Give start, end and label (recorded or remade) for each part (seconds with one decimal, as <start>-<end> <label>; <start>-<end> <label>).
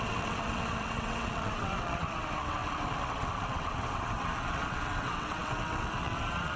0.0-6.6 remade